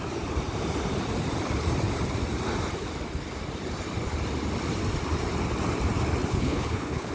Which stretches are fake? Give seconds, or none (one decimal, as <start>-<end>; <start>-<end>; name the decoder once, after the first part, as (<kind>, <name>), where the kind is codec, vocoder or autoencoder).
6.3-7.1 (codec, HILCodec)